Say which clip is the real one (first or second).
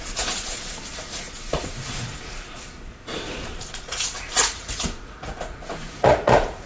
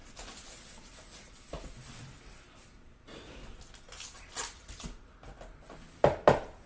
second